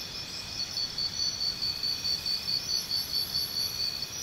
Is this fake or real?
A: real